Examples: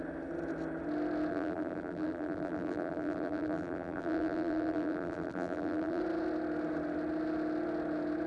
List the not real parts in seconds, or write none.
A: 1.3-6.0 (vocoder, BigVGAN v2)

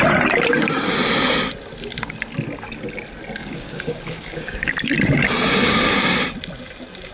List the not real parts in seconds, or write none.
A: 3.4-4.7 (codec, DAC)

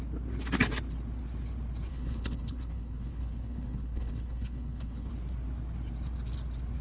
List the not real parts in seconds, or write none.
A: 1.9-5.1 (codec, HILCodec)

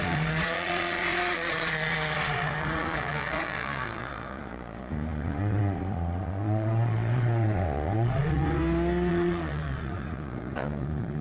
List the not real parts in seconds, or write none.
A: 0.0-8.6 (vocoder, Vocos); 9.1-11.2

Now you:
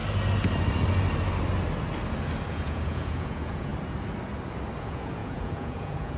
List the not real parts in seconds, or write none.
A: 2.5-3.7 (vocoder, Vocos); 4.8-6.2

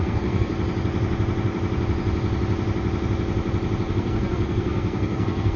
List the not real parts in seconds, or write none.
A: 0.0-0.5 (codec, SNAC); 3.9-5.6